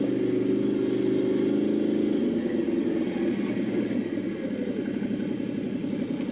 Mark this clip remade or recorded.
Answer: recorded